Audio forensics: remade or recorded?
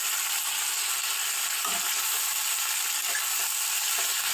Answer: recorded